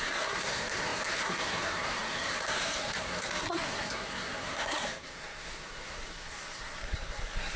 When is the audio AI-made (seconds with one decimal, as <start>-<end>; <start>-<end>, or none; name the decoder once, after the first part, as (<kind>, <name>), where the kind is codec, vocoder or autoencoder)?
0.0-7.6 (codec, SNAC)